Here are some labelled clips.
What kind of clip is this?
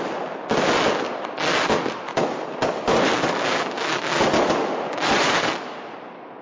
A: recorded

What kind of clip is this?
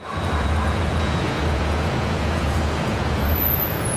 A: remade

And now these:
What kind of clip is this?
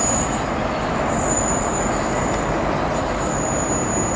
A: recorded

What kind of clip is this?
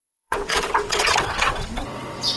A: remade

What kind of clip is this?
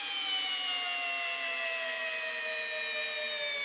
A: recorded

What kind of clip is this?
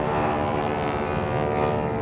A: recorded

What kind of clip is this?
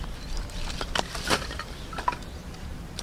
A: recorded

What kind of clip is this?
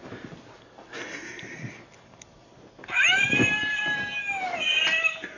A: recorded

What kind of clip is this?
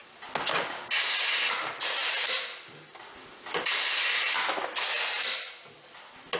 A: recorded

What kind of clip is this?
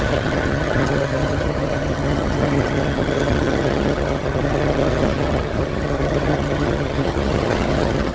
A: remade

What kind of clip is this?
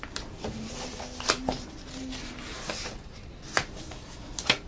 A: recorded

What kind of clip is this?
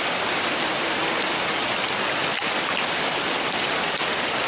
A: recorded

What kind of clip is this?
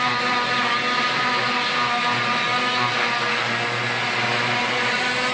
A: recorded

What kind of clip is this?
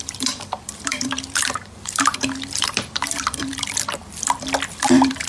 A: remade